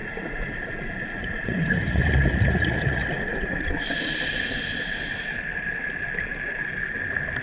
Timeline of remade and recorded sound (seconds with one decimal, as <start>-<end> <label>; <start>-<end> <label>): 0.0-3.8 remade; 3.8-7.4 recorded